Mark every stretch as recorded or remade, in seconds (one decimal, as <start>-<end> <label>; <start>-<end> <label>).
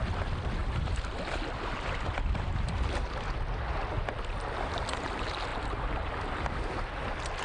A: 0.0-0.6 recorded; 0.6-3.2 remade; 3.2-7.4 recorded